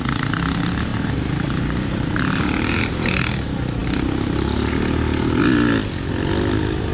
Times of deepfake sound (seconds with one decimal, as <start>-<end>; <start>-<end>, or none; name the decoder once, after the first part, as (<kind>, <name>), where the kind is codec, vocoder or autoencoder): 0.9-3.2 (vocoder, BigVGAN v2)